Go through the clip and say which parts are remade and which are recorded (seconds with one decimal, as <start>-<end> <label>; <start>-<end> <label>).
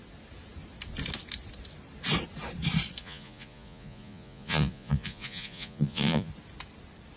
0.0-3.0 recorded; 3.0-6.3 remade; 6.3-7.2 recorded